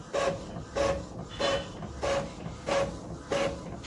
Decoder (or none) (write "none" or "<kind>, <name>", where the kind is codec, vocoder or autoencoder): none